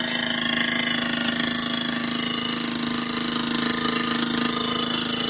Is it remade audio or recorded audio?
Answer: recorded